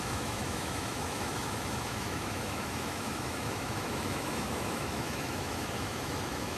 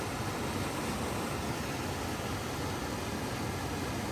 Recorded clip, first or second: second